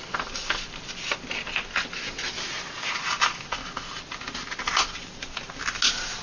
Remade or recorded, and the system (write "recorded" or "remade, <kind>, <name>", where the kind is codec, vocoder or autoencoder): recorded